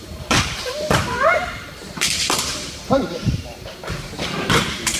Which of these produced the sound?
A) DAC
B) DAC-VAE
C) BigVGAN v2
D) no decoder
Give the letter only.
C